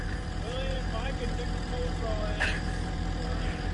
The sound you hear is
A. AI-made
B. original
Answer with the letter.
A